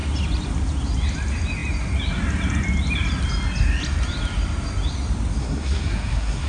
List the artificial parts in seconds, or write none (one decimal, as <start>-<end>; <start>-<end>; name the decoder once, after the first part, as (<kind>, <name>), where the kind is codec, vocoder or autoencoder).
5.4-6.5 (codec, SNAC)